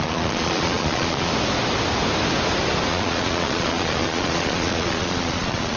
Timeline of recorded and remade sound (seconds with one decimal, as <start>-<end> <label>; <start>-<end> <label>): 0.0-1.3 remade; 1.3-2.9 recorded; 2.9-5.8 remade